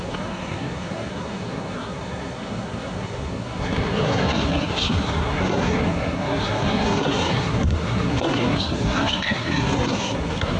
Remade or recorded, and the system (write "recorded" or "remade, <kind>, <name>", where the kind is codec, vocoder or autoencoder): remade, codec, SNAC